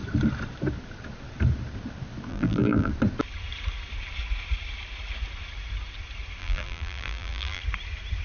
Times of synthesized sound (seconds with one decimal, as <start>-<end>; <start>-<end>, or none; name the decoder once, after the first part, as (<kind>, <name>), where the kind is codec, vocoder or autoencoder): 2.3-2.9 (vocoder, BigVGAN v2); 6.4-7.6